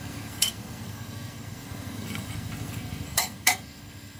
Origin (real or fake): fake